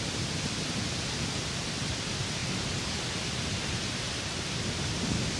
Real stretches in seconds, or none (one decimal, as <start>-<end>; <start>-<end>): 0.0-5.4

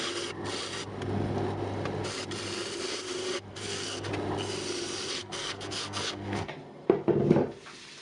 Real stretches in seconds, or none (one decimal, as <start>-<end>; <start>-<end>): 0.0-3.5; 4.1-5.2; 6.5-8.0

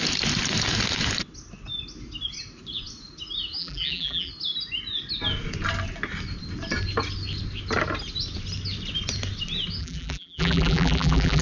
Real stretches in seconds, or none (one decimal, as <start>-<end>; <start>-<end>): 0.0-3.6; 4.3-9.8

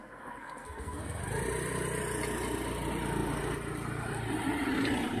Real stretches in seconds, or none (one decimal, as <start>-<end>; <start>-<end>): 1.2-5.2

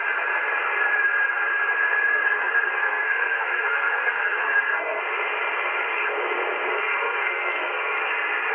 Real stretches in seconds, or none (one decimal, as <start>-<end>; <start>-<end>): 0.0-2.1; 5.0-6.7; 8.1-8.5